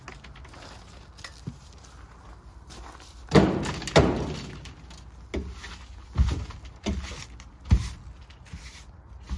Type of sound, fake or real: real